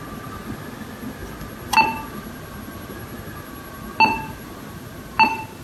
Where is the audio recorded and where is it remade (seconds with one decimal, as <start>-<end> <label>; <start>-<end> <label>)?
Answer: 0.0-5.6 recorded